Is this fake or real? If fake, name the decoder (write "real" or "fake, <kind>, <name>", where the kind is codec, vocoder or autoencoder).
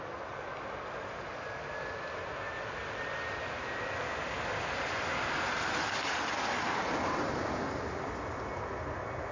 real